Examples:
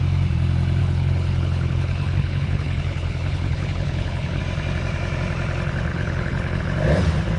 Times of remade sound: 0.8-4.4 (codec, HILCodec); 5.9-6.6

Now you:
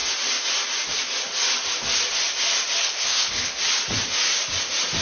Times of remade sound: 2.8-3.5 (codec, HILCodec)